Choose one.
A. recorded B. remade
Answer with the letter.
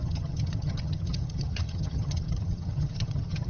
B